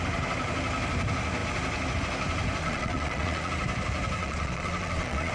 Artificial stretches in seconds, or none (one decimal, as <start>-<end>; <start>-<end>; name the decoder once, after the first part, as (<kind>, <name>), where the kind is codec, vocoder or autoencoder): 2.6-3.5 (vocoder, Vocos); 4.2-5.3